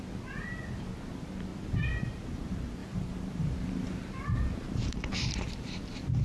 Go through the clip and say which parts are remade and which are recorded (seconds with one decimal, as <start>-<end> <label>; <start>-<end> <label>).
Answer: 0.0-2.8 recorded; 2.8-5.3 remade; 5.3-6.2 recorded